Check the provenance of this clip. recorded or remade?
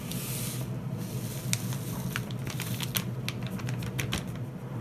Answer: recorded